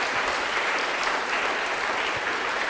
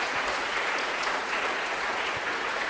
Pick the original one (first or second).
first